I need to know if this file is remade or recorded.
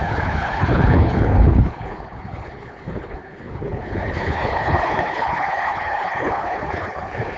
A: remade